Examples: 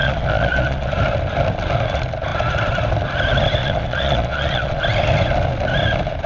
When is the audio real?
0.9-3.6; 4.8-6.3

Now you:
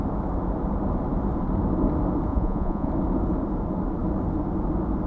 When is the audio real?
0.0-2.3; 2.9-5.1

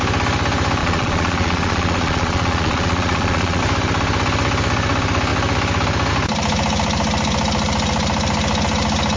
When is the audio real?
0.0-0.8; 3.6-9.2

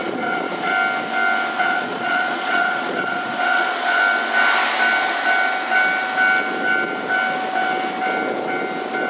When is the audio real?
0.7-1.6; 4.0-9.1

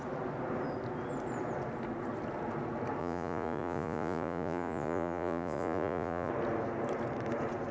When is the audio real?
0.0-3.0; 6.3-7.7

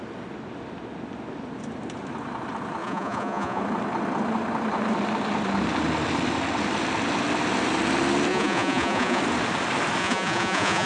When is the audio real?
0.0-2.8; 3.6-8.3; 9.2-10.0

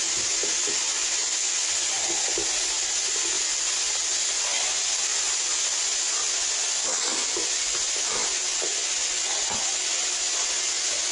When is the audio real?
0.0-11.1